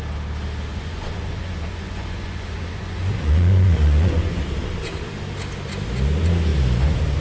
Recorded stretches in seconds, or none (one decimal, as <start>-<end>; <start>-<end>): 0.0-0.7; 4.4-7.2